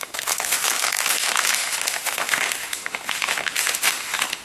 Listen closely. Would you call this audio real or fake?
fake